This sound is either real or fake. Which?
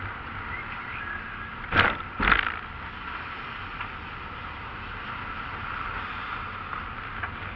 real